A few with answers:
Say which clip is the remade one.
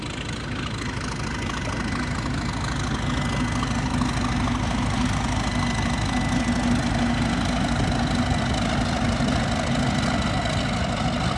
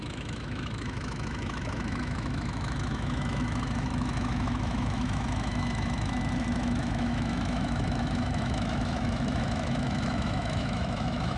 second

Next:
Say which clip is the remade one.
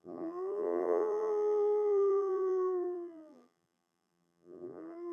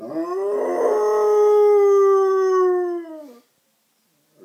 first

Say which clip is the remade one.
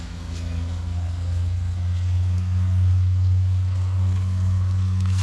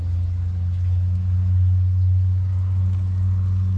first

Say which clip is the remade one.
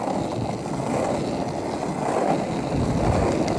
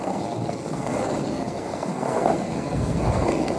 second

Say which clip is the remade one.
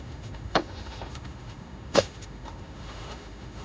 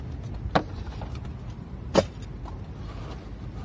first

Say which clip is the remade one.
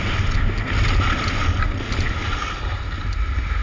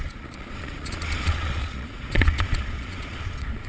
second